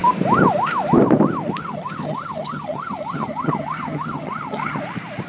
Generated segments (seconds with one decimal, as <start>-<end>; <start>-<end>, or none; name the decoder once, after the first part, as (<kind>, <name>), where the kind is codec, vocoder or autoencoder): 1.6-4.8 (vocoder, HiFi-GAN)